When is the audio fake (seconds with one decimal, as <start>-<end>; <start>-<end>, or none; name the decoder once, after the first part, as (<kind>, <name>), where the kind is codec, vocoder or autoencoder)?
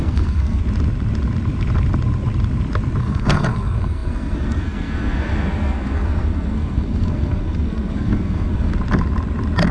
0.0-0.6 (codec, SNAC); 3.0-8.7